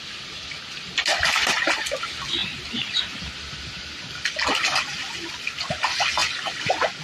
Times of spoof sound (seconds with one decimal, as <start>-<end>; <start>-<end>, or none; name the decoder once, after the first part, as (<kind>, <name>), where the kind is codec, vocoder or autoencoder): none